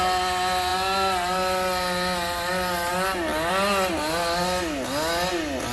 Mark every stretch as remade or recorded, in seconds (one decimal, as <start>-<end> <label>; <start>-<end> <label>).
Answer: 0.0-5.7 recorded